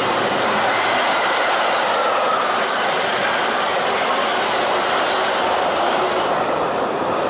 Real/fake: real